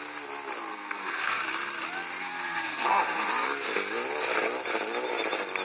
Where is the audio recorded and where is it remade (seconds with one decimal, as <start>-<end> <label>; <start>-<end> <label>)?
0.0-0.7 recorded; 0.7-1.4 remade; 1.4-2.2 recorded; 2.2-3.3 remade; 3.3-5.6 recorded